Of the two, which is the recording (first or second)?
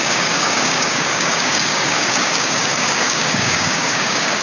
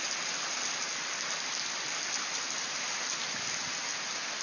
second